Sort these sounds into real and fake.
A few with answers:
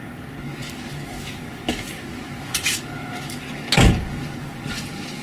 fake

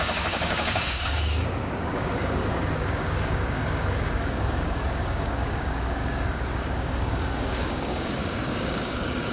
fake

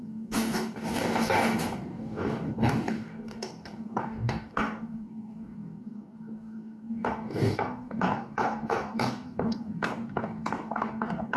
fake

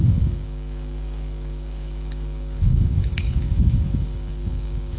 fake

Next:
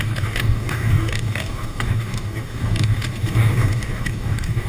fake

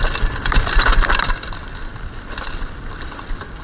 real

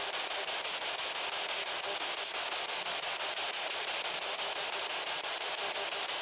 real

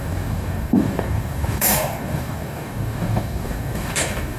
fake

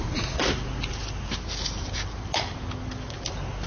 real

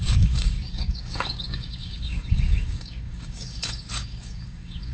fake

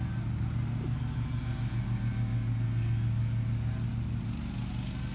real